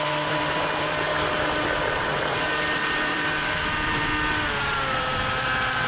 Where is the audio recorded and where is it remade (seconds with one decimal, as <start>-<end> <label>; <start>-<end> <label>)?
0.0-1.1 remade; 1.1-2.4 recorded; 2.4-4.1 remade; 4.1-4.6 recorded; 4.6-5.9 remade